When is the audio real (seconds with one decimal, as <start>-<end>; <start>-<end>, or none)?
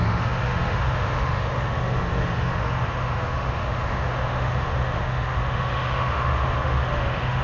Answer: none